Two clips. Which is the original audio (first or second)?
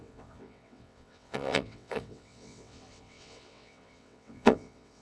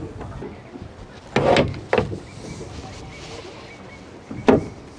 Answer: second